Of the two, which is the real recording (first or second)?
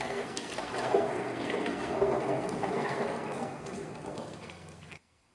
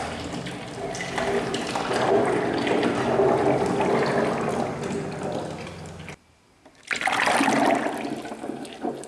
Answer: second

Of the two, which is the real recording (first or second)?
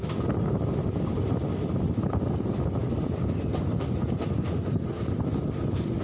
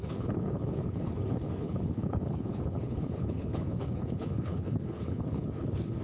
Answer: first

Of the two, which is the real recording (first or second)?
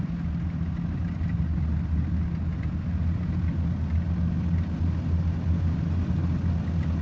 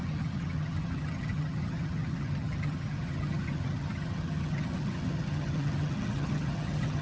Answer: first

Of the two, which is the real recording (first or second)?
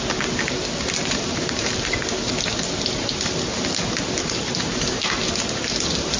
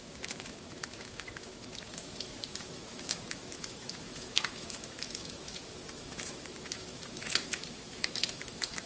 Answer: first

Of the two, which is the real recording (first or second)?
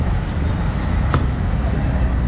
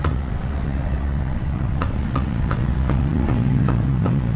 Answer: first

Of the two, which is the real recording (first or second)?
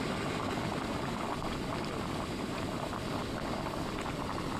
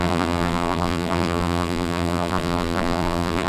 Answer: first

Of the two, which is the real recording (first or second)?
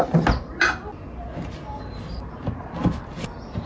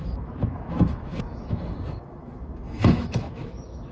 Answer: first